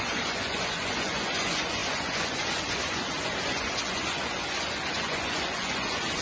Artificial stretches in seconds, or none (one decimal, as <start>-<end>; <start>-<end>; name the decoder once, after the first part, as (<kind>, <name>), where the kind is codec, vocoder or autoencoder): 0.0-6.2 (vocoder, Vocos)

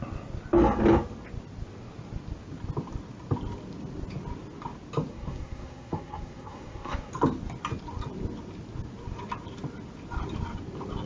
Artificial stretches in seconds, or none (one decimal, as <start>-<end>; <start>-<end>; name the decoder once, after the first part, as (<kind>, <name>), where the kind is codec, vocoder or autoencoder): 5.1-7.1 (codec, SNAC)